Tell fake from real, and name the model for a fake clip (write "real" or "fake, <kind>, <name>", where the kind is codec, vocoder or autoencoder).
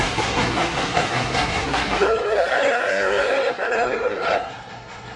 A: fake, codec, SNAC